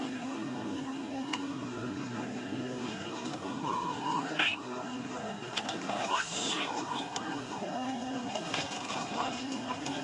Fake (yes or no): yes